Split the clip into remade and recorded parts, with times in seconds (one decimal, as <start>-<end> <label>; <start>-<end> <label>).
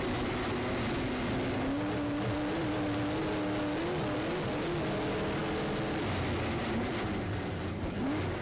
0.0-8.4 recorded